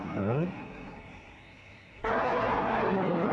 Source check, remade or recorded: remade